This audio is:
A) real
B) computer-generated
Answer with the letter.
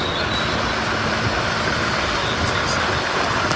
A